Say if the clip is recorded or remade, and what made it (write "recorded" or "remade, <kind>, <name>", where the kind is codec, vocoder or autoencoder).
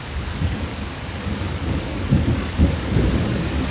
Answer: remade, codec, DAC